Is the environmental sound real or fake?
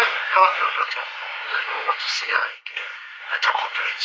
fake